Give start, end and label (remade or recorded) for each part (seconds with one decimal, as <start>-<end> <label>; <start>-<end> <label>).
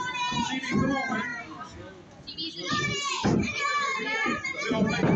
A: 0.0-5.2 recorded